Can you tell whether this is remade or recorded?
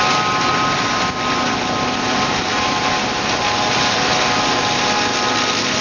recorded